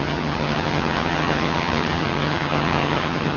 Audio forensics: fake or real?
fake